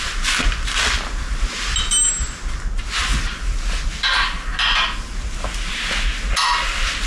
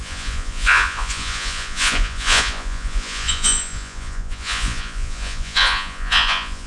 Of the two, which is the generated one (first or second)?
second